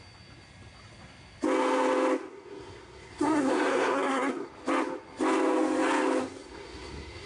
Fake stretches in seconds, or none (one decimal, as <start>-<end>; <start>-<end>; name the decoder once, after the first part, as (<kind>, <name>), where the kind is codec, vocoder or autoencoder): 2.3-4.5 (codec, SNAC); 6.2-7.3